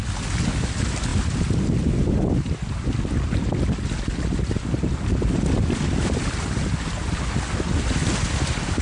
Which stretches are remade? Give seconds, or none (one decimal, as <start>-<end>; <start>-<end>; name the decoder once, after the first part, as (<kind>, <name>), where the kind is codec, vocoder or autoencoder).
none